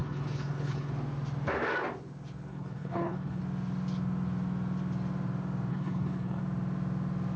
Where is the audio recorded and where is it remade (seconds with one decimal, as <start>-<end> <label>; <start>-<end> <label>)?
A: 0.0-0.9 remade; 0.9-2.5 recorded; 2.5-3.4 remade; 3.4-5.7 recorded; 5.7-6.4 remade; 6.4-7.4 recorded